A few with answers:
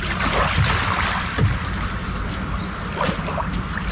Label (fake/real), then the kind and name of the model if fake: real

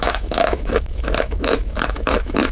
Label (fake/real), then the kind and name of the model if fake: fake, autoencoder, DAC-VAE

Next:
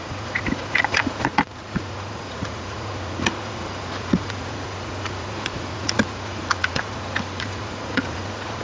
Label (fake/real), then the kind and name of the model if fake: fake, vocoder, Vocos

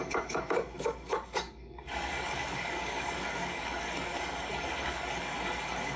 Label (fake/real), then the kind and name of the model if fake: fake, codec, DAC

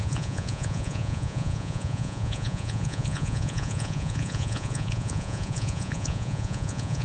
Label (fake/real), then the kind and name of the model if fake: fake, vocoder, Vocos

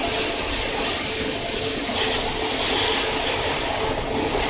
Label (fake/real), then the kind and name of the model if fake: real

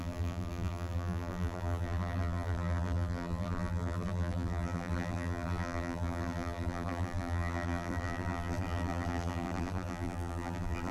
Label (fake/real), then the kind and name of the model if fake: fake, vocoder, BigVGAN v2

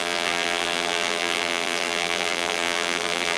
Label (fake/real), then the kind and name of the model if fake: fake, vocoder, BigVGAN v2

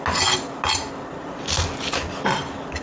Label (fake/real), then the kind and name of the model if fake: real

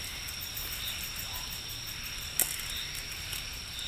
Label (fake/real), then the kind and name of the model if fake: real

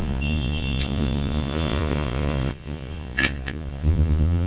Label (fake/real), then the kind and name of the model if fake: fake, vocoder, Vocos